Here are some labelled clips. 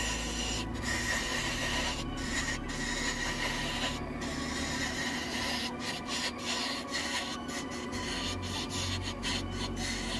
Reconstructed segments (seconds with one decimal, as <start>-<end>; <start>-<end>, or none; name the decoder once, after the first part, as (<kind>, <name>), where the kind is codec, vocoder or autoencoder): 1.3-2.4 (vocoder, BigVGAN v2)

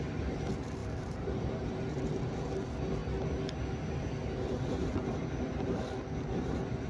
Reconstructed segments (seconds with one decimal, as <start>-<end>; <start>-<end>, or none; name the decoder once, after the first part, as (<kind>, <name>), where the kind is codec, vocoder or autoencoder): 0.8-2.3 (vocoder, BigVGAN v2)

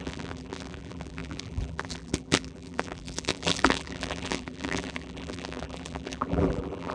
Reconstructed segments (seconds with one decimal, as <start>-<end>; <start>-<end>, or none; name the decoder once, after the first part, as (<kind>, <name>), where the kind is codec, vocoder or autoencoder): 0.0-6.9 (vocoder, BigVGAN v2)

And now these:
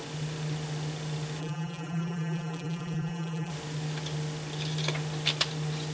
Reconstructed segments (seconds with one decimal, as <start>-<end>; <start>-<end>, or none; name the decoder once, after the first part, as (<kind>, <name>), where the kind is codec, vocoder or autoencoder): 1.4-3.5 (vocoder, BigVGAN v2)

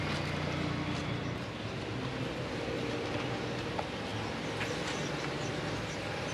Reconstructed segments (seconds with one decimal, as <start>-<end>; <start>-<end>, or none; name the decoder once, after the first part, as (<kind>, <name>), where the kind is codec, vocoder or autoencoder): none

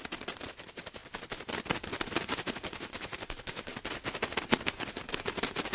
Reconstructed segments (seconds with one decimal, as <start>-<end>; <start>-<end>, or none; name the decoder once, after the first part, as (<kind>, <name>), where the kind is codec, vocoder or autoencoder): 0.0-1.0 (vocoder, BigVGAN v2); 2.0-3.7; 4.7-5.7